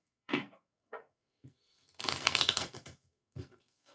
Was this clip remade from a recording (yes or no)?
yes